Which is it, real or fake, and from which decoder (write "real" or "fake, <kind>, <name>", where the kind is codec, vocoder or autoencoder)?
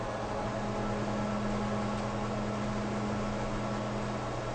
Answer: real